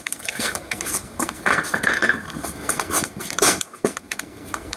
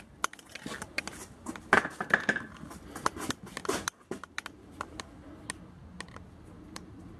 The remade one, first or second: first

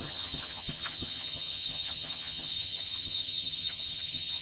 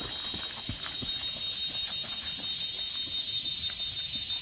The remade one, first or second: first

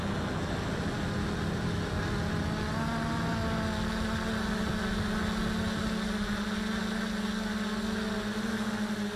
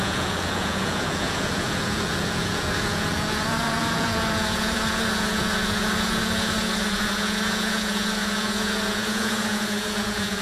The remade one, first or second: second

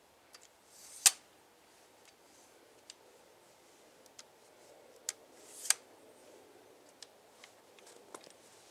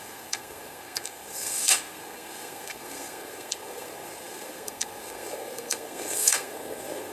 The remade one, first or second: second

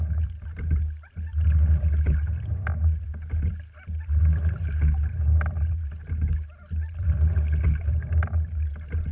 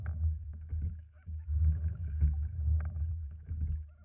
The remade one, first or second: second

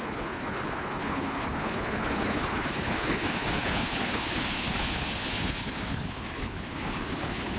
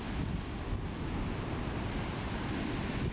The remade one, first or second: first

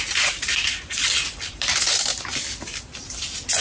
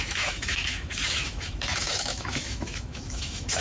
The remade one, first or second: second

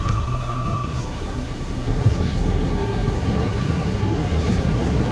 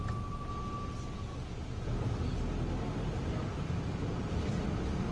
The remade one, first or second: first